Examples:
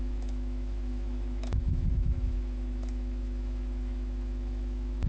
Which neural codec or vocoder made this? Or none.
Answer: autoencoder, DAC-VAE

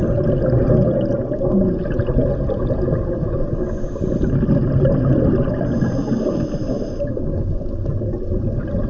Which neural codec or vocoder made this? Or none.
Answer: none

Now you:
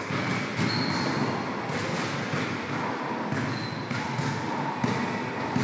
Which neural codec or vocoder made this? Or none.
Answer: none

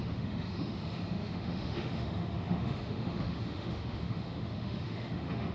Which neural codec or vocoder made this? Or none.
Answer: autoencoder, DAC-VAE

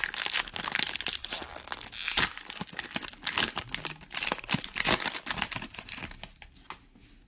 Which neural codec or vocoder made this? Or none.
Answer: none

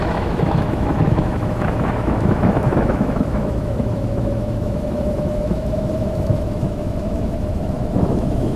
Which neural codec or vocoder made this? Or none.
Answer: autoencoder, DAC-VAE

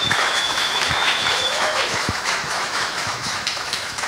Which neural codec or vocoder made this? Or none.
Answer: autoencoder, DAC-VAE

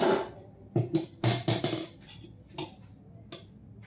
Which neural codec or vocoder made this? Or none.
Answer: none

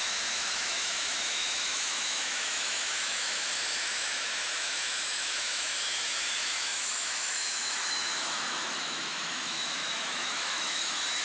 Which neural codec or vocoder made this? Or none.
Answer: autoencoder, DAC-VAE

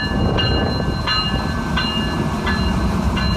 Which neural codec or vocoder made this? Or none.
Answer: none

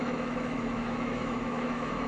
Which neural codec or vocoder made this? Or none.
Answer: autoencoder, DAC-VAE